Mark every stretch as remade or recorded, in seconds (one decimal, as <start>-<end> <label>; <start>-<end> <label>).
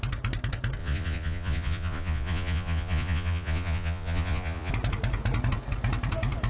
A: 0.0-0.8 recorded; 0.8-4.7 remade; 4.7-6.5 recorded